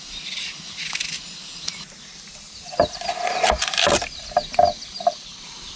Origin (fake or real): real